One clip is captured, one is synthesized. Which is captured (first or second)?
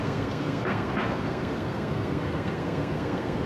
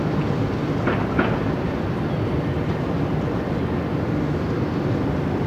second